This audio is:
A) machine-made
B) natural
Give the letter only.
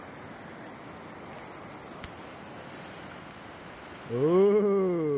B